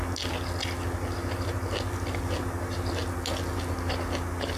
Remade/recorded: recorded